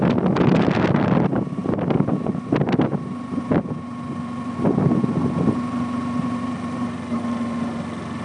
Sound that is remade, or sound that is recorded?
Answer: recorded